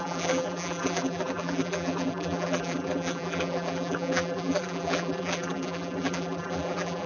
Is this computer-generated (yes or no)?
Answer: yes